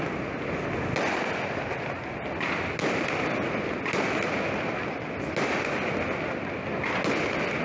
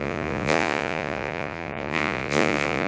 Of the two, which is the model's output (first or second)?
second